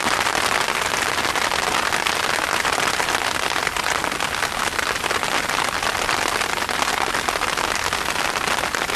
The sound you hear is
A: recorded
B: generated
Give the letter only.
A